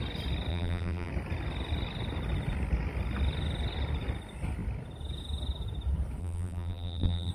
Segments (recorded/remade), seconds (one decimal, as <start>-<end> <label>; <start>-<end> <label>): 0.0-0.5 recorded; 0.5-1.1 remade; 1.1-6.2 recorded; 6.2-7.3 remade